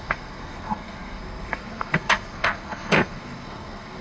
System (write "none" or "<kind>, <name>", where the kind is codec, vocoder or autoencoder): codec, SNAC